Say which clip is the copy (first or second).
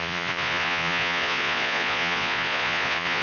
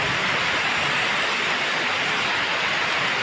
first